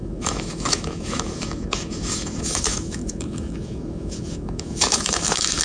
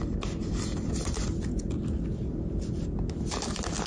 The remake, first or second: first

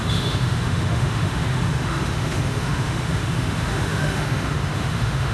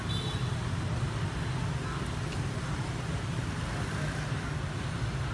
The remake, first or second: first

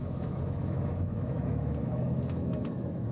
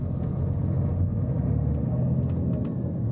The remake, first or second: first